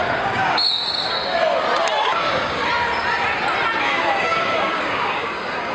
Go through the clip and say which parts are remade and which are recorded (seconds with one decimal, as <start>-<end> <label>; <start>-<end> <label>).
0.0-1.1 remade; 1.1-2.0 recorded; 2.0-2.6 remade; 2.6-3.8 recorded; 3.8-5.7 remade